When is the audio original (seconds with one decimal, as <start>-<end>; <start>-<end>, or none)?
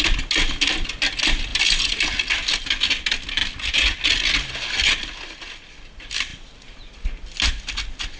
0.0-8.2